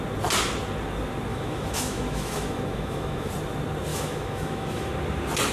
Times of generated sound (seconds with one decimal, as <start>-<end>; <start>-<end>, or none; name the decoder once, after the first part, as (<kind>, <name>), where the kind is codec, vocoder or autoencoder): 1.3-3.3 (autoencoder, DAC-VAE); 3.9-4.9